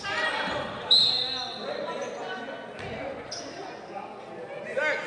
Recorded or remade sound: recorded